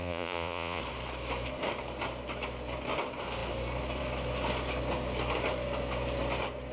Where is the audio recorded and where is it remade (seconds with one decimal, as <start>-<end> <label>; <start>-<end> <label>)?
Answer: 0.0-0.8 remade; 0.8-6.7 recorded